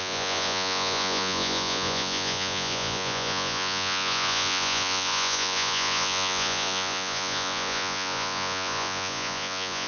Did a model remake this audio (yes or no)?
yes